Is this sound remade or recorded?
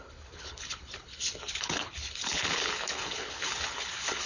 remade